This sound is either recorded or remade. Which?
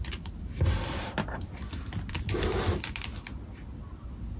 recorded